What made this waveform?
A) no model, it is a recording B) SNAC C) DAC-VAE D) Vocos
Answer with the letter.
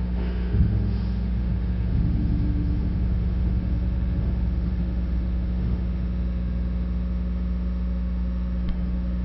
C